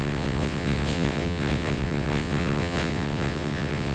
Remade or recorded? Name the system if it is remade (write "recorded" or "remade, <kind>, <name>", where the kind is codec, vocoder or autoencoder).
remade, vocoder, WaveNeXt